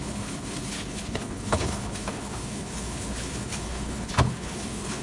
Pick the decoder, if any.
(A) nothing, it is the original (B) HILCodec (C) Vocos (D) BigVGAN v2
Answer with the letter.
B